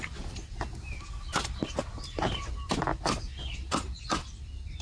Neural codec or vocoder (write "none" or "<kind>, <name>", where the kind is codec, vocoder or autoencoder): none